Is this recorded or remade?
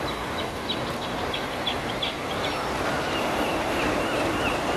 remade